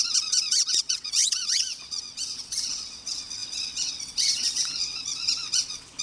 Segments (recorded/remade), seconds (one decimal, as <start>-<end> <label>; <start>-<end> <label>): 0.0-6.0 remade